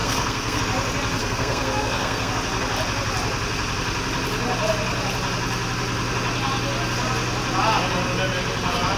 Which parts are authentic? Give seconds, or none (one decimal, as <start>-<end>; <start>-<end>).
0.6-1.2; 2.3-9.0